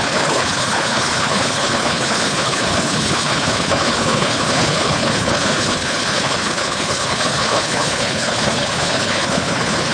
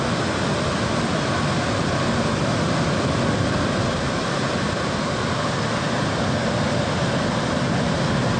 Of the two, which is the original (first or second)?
second